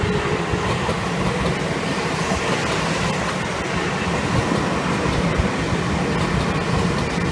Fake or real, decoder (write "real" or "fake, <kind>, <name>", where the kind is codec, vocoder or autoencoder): real